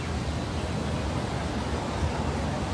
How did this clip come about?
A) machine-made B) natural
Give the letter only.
B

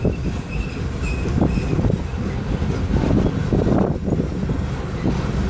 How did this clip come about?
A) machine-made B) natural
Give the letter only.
B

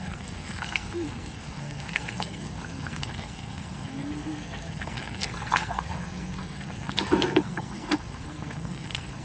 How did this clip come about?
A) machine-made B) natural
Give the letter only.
A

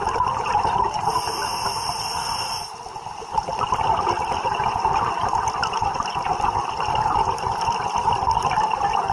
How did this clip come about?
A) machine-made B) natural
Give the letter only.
B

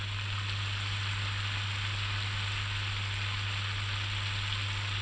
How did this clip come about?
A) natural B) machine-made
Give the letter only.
A